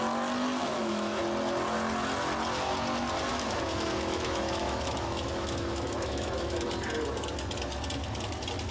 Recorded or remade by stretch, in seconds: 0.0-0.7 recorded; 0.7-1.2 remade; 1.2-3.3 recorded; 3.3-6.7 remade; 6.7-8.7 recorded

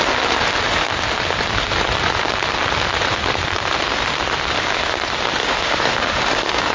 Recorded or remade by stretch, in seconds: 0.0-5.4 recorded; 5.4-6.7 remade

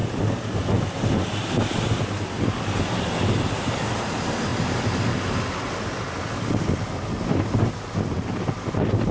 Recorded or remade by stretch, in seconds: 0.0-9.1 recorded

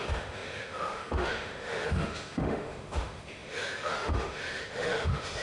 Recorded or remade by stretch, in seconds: 0.0-5.4 remade

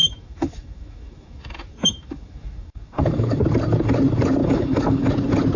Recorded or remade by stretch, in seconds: 0.0-3.4 remade; 3.4-4.4 recorded; 4.4-5.1 remade; 5.1-5.6 recorded

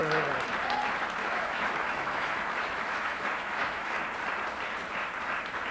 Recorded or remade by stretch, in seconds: 0.0-1.2 recorded; 1.2-4.0 remade; 4.0-5.7 recorded

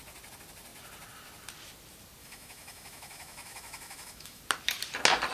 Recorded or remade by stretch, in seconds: 0.0-2.2 recorded; 2.2-4.4 remade; 4.4-5.3 recorded